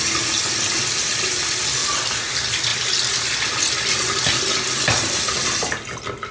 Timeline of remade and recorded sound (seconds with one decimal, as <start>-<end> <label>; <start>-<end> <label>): 0.0-6.3 recorded